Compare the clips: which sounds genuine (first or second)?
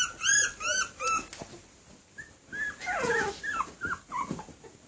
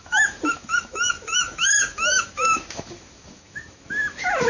first